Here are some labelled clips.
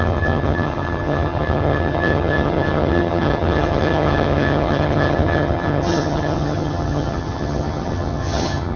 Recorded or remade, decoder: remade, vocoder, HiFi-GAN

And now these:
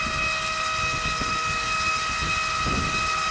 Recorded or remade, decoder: recorded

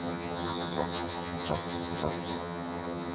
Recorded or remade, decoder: remade, vocoder, HiFi-GAN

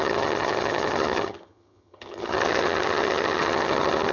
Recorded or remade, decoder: remade, vocoder, HiFi-GAN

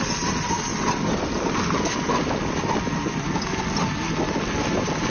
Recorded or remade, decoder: recorded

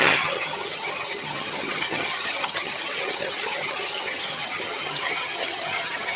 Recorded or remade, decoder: remade, vocoder, HiFi-GAN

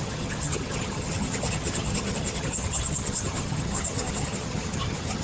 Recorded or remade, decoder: remade, vocoder, HiFi-GAN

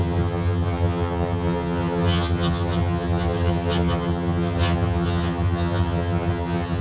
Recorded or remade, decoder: remade, vocoder, HiFi-GAN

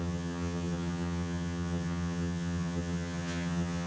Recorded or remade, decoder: remade, vocoder, HiFi-GAN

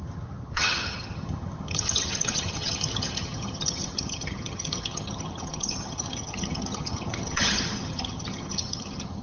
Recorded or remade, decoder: remade, vocoder, HiFi-GAN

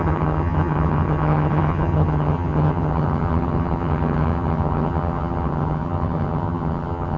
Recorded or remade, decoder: remade, vocoder, HiFi-GAN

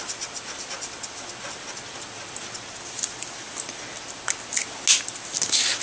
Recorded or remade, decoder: recorded